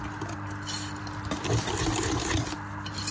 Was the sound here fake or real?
real